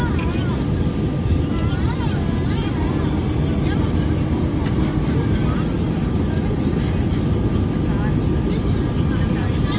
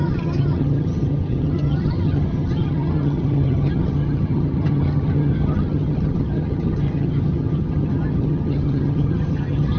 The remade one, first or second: second